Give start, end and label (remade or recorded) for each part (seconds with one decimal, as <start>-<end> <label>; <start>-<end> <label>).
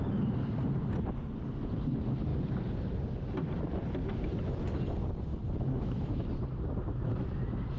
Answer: 0.0-5.3 recorded; 5.3-6.3 remade; 6.3-7.8 recorded